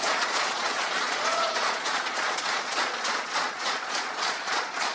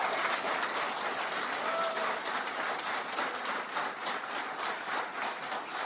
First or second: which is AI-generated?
first